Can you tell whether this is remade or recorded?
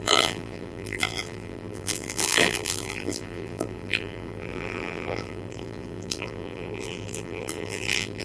remade